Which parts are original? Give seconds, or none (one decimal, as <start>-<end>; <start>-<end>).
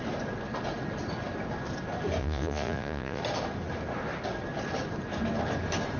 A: 0.0-2.2; 3.2-6.0